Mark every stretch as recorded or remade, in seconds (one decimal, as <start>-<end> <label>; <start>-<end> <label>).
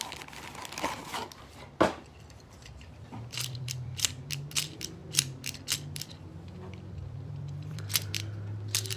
0.0-1.2 recorded; 1.2-4.3 remade; 4.3-7.0 recorded; 7.0-8.1 remade; 8.1-9.0 recorded